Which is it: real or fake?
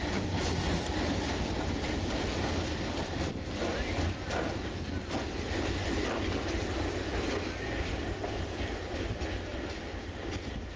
real